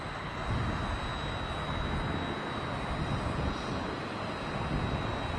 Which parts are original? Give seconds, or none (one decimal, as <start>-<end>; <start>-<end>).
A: 0.0-5.4